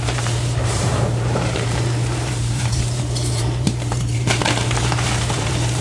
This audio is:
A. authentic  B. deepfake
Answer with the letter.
B